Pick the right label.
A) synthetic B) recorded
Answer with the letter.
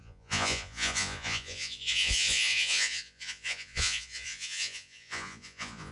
A